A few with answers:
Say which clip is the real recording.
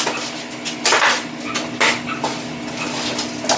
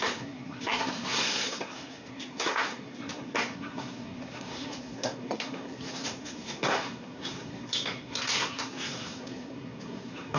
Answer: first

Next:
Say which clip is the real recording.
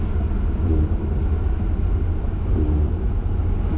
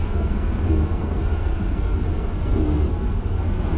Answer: first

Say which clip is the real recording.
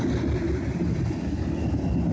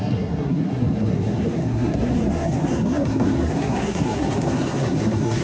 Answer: first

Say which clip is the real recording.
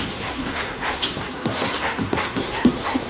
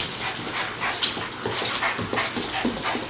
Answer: second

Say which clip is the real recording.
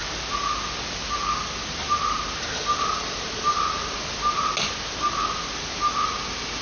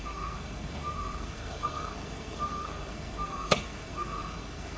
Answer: first